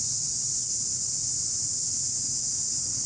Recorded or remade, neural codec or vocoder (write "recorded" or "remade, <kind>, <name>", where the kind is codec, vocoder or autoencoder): recorded